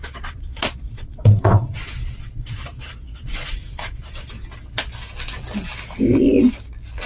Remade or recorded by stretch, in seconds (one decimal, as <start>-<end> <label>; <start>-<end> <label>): 0.0-4.3 remade; 4.3-7.1 recorded